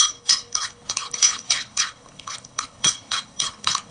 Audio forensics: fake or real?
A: fake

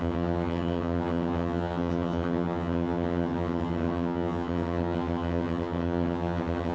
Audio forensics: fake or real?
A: fake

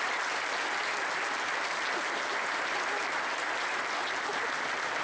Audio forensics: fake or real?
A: real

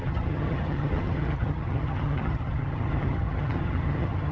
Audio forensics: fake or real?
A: fake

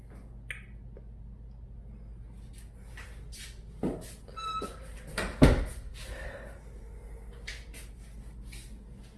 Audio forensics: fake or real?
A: real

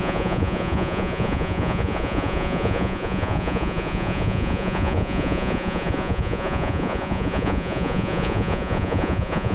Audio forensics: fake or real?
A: fake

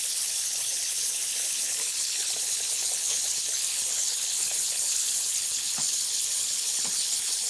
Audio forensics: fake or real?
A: fake